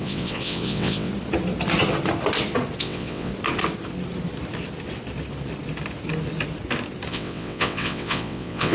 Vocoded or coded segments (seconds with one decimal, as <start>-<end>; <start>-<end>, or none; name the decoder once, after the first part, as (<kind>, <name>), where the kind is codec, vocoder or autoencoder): 0.0-1.1 (vocoder, WaveNeXt); 2.8-3.3; 7.1-8.7

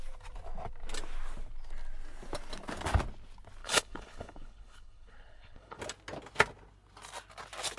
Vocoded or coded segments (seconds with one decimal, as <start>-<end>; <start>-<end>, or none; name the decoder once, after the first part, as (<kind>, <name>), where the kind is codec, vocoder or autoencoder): 3.6-5.8 (codec, HILCodec)

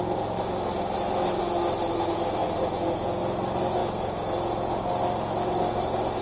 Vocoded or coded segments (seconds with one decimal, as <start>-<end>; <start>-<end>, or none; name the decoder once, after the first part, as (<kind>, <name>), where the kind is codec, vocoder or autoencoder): 2.4-3.2 (vocoder, Vocos); 3.8-4.9

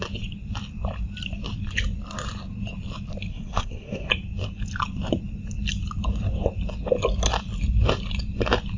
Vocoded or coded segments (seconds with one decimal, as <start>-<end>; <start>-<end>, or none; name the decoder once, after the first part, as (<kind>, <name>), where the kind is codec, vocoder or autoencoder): 3.3-4.1 (codec, SNAC)

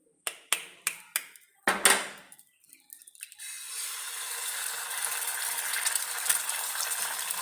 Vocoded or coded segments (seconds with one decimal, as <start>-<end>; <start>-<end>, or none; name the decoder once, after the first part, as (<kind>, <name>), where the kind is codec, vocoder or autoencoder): 0.0-1.6 (vocoder, BigVGAN v2)